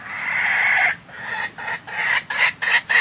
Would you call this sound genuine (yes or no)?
yes